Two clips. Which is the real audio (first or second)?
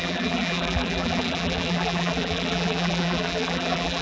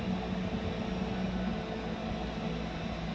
second